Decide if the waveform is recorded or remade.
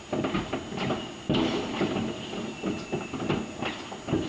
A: recorded